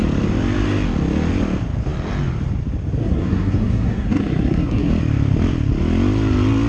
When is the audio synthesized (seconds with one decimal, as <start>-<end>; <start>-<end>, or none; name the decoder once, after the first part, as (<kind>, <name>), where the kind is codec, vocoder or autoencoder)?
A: 3.0-4.9 (codec, SNAC)